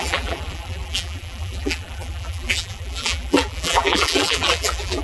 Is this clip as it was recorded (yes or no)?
no